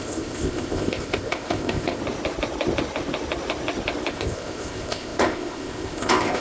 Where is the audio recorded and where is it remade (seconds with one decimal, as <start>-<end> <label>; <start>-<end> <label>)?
0.0-2.0 remade; 2.0-4.1 recorded; 4.1-6.4 remade